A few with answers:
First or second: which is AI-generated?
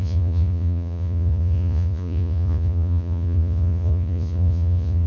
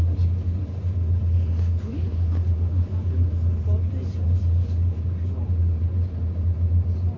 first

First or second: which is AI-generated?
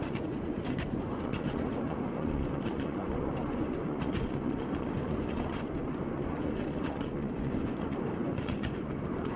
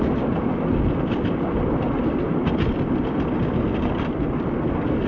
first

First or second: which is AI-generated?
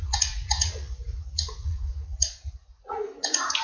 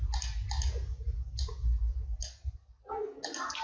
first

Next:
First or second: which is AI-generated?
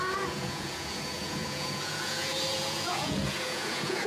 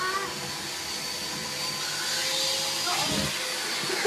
first